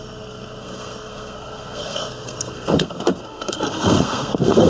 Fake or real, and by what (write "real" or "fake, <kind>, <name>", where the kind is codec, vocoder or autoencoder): fake, codec, SNAC